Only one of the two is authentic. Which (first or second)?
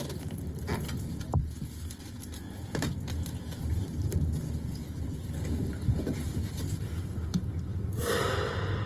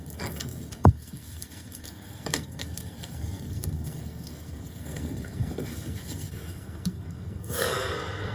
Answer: first